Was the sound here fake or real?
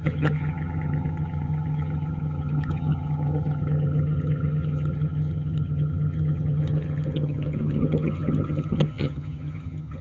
fake